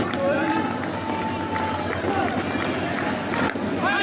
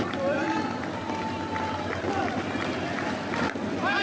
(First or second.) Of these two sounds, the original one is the first